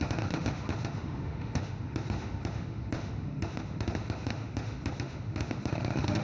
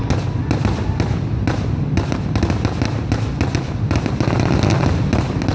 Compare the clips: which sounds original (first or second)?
second